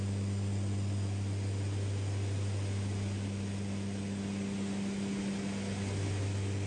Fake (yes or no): no